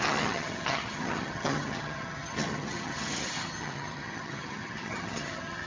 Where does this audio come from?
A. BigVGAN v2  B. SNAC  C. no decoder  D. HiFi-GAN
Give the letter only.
D